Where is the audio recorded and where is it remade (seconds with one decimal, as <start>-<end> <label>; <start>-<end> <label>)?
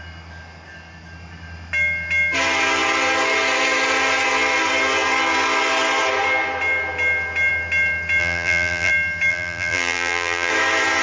0.0-8.2 recorded; 8.2-8.9 remade; 8.9-9.3 recorded; 9.3-10.5 remade; 10.5-11.0 recorded